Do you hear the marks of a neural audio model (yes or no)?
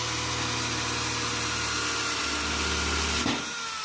no